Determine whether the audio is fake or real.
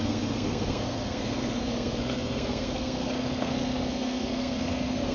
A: fake